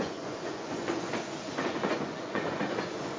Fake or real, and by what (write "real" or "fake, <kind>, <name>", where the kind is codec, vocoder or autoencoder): fake, vocoder, Vocos